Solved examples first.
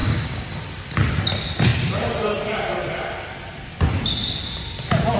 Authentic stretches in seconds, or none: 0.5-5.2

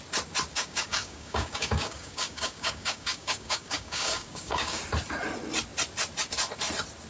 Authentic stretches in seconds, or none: 0.0-0.5; 4.8-7.1